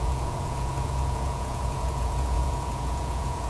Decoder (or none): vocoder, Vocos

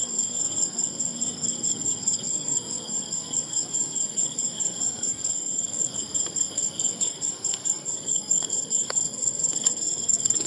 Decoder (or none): codec, SNAC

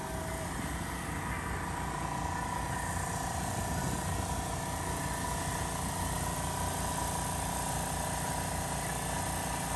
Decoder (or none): none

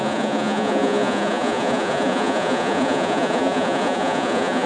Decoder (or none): vocoder, Vocos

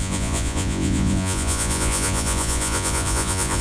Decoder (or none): vocoder, Vocos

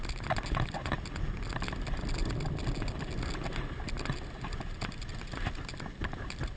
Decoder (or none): none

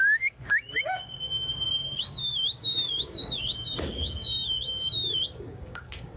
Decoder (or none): codec, DAC